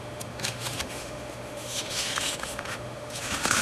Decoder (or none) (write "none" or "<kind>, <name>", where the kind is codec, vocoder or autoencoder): autoencoder, DAC-VAE